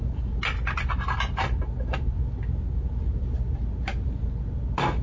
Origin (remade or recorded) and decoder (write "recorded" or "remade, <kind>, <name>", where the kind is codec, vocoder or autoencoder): recorded